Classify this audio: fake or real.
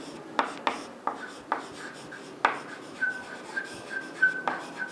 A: real